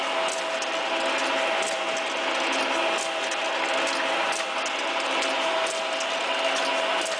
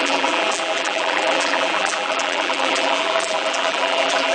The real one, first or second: first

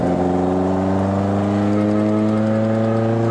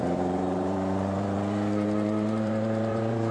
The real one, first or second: first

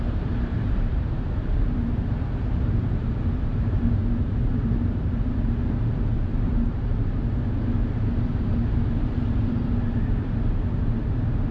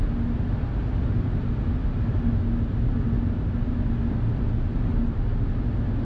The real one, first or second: second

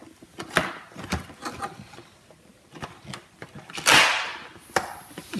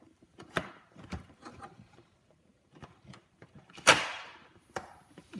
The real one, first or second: first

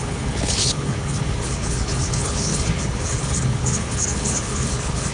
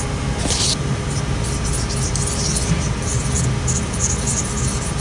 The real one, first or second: second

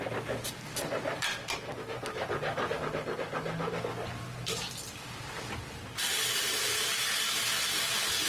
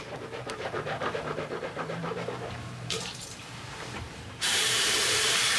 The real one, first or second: first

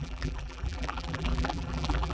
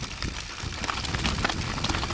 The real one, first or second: second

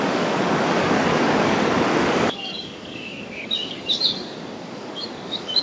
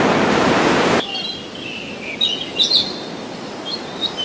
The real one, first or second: second